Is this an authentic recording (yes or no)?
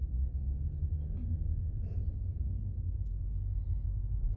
yes